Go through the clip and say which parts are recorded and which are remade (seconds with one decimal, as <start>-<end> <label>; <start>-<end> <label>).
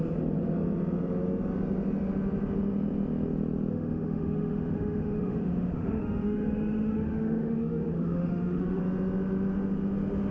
0.0-3.7 recorded; 3.7-8.8 remade; 8.8-10.3 recorded